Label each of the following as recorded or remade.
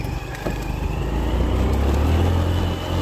recorded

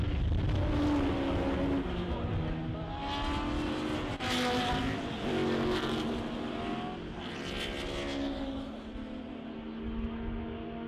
recorded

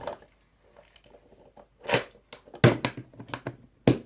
recorded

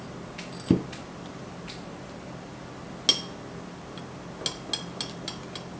recorded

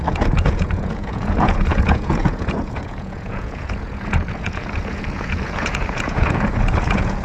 remade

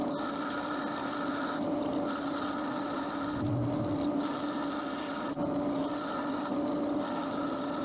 recorded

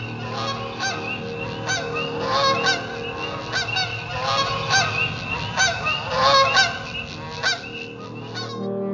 recorded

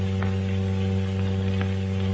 recorded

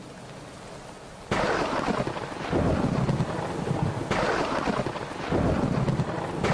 recorded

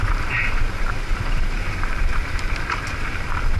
remade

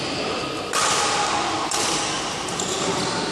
recorded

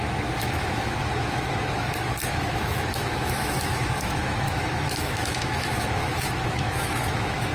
remade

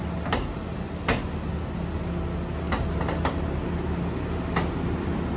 recorded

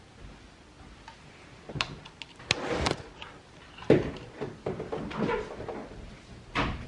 recorded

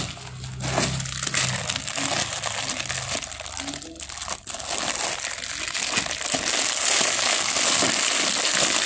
recorded